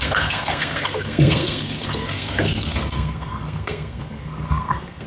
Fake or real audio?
fake